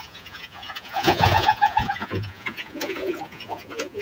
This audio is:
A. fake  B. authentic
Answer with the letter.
A